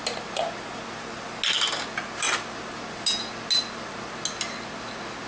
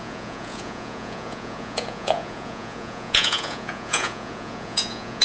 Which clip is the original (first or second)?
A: first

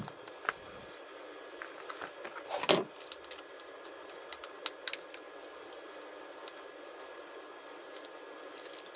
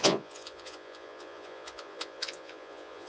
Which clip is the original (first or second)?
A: first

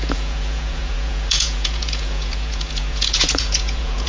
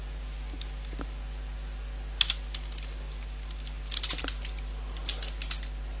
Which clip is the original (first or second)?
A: second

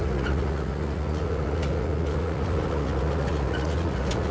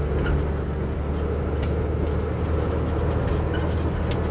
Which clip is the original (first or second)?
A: second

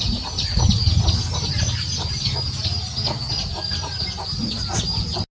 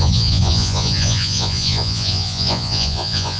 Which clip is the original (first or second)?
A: first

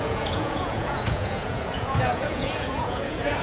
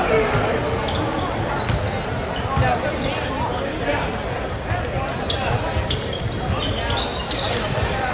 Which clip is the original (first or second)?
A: second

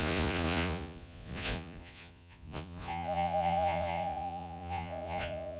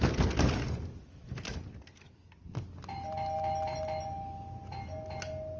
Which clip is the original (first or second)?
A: second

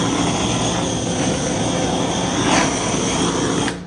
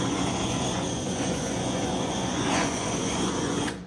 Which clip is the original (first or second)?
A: first